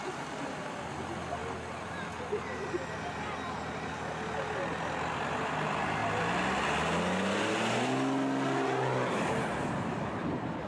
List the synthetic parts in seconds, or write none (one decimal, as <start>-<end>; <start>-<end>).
none